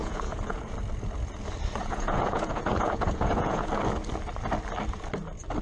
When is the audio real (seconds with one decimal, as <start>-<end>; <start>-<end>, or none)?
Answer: 0.7-1.8; 3.7-5.6